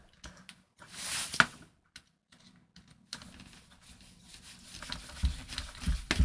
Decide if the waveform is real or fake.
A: real